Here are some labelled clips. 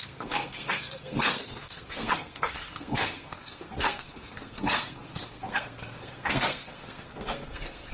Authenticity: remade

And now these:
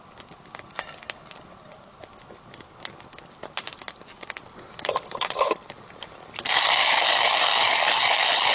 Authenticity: recorded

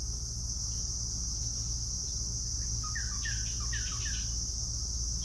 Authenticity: recorded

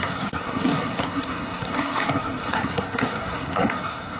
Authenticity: remade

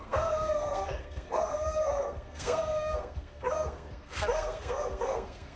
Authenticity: remade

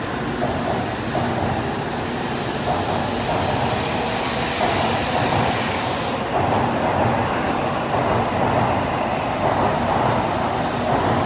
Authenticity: recorded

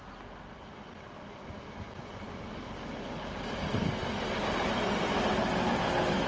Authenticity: recorded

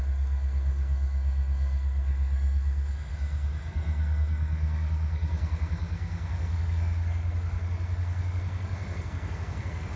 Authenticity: remade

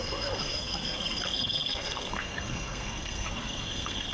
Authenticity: remade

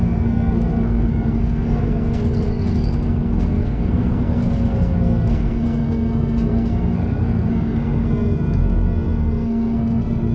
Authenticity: remade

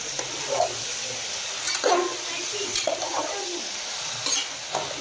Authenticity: recorded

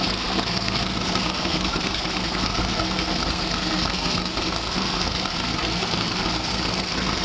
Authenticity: remade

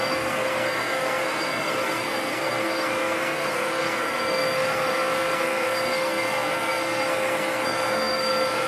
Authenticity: remade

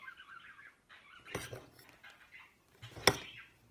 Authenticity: recorded